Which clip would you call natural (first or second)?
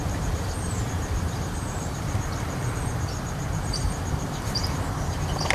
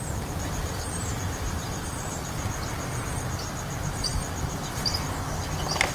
second